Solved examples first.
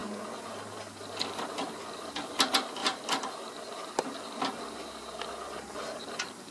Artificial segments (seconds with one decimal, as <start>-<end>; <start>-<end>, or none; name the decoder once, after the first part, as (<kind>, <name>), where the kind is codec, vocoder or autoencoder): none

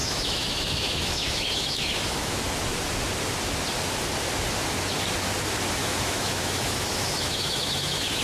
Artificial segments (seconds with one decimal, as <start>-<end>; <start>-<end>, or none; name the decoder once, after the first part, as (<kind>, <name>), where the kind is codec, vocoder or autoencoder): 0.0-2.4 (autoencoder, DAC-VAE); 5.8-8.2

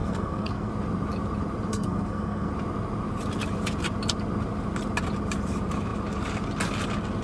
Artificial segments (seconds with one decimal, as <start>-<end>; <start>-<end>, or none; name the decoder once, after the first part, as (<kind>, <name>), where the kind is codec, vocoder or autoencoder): 0.0-0.7 (codec, SNAC); 1.7-2.5